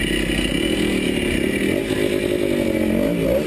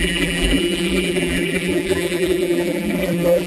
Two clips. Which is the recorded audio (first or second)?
first